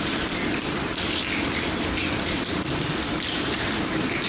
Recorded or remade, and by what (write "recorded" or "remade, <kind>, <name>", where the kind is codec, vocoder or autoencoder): remade, vocoder, BigVGAN v2